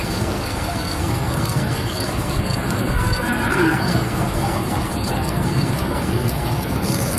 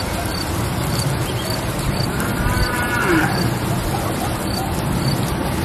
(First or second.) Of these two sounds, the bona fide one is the second